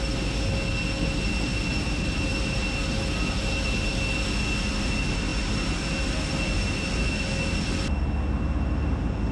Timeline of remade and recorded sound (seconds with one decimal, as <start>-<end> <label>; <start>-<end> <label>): 0.0-9.3 recorded